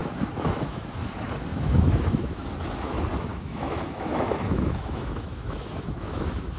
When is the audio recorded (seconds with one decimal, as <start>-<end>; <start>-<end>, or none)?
0.8-1.5; 2.5-3.3